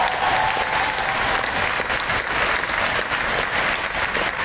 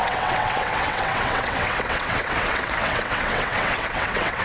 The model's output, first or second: second